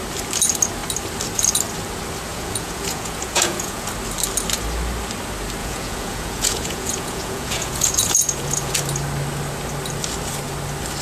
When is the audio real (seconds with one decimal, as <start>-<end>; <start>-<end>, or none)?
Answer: 0.0-2.3; 3.9-5.6; 8.7-11.0